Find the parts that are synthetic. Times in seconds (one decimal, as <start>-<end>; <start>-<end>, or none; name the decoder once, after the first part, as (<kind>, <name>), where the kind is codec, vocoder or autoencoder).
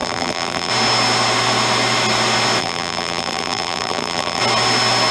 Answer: 0.0-0.7 (vocoder, BigVGAN v2); 2.6-4.4